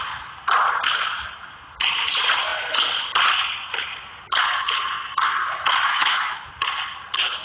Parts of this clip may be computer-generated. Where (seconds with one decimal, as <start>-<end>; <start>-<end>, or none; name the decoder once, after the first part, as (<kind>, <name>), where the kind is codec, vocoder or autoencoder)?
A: 5.9-6.5 (autoencoder, DAC-VAE)

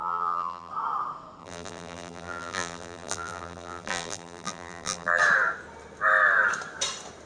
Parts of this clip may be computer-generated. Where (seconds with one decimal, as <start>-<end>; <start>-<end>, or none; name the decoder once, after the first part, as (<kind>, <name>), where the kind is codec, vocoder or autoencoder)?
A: 0.0-0.7 (vocoder, BigVGAN v2); 1.4-5.2

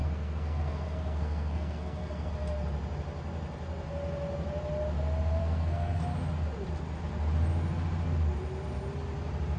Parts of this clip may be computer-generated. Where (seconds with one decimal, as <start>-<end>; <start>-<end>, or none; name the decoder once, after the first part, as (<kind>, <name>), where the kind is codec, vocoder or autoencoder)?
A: 0.0-2.3 (codec, SNAC); 5.4-6.0

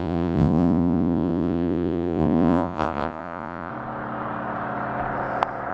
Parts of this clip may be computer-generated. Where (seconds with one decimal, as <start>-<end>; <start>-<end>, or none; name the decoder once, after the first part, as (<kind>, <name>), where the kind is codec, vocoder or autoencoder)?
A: 0.0-3.7 (vocoder, Vocos)

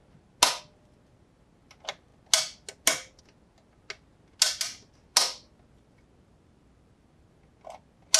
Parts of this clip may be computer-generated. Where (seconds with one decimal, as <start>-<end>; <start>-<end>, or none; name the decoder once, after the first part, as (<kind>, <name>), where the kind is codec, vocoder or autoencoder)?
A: none

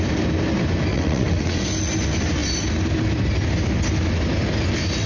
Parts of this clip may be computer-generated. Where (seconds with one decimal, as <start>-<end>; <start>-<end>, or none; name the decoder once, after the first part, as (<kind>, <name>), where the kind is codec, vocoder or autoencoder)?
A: 0.9-1.6 (vocoder, WaveNeXt)

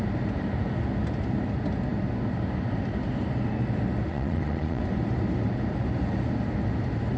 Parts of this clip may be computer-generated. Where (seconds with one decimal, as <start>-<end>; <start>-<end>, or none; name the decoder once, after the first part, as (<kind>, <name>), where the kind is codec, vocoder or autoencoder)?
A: 4.1-4.8 (vocoder, Vocos)